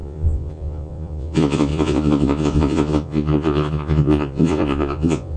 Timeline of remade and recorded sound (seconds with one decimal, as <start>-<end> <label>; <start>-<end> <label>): 0.0-5.4 remade